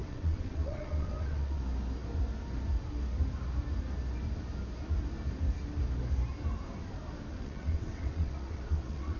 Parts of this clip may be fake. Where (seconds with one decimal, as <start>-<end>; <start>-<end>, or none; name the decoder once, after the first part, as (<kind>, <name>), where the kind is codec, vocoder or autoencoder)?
0.0-1.6 (vocoder, WaveNeXt); 7.3-9.2